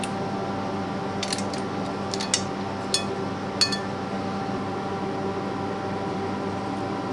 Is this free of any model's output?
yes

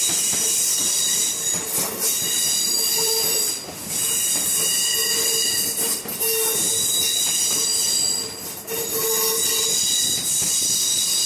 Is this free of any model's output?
yes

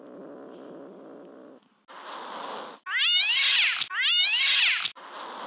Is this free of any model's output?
yes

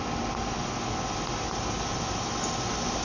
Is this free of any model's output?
yes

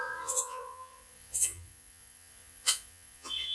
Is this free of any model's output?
no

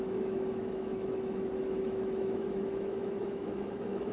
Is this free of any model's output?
no